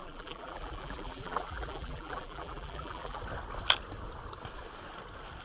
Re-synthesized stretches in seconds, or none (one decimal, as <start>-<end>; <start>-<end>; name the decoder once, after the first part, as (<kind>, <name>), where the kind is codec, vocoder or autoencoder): 0.0-3.2 (vocoder, BigVGAN v2)